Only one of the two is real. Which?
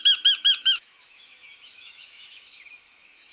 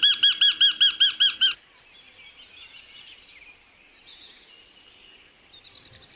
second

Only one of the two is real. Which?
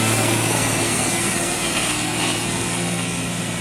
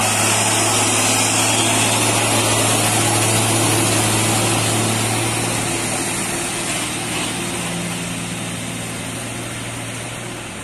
second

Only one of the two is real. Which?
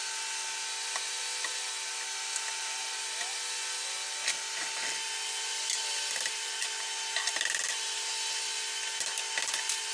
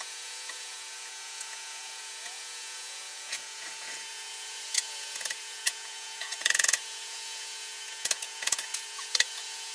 first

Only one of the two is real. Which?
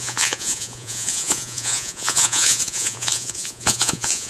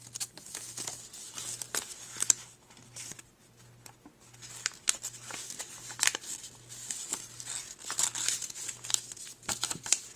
second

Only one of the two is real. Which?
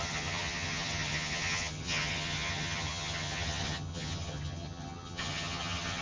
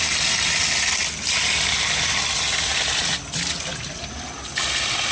second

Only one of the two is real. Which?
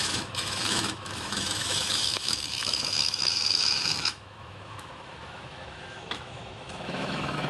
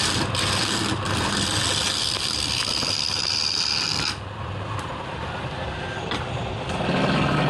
second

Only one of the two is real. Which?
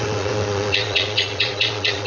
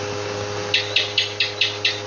second